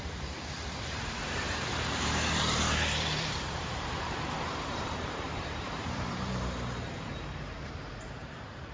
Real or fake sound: fake